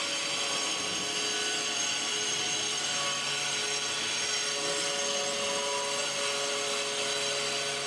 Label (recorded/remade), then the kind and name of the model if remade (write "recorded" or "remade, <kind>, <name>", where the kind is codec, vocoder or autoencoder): recorded